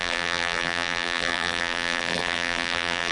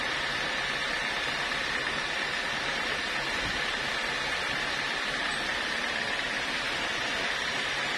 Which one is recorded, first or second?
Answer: second